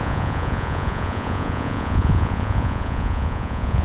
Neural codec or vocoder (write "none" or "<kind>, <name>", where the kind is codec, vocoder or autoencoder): vocoder, Vocos